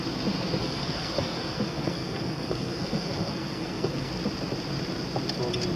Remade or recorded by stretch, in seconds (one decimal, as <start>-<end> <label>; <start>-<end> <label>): 0.0-0.6 recorded; 0.6-4.1 remade; 4.1-5.8 recorded